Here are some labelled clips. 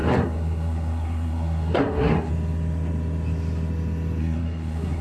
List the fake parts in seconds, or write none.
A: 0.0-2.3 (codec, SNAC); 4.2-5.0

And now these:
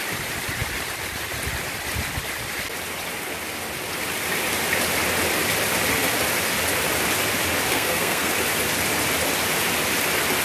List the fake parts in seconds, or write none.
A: 7.7-8.3 (codec, SNAC)

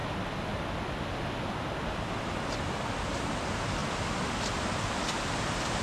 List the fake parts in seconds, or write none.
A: none

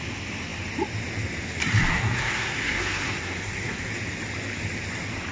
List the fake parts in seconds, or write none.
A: 1.9-3.9 (codec, SNAC)

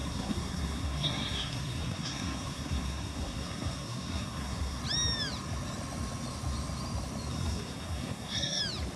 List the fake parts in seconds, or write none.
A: 0.0-4.8 (codec, SNAC); 7.3-8.6

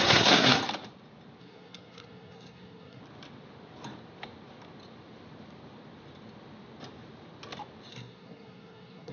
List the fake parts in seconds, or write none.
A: 0.0-0.6 (codec, SNAC); 1.4-3.0; 7.9-9.1

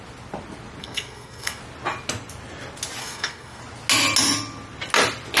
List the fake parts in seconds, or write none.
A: 0.8-1.6 (codec, SNAC); 3.0-3.6

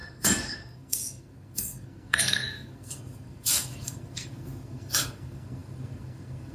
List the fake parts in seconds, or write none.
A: 0.0-6.5 (codec, SNAC)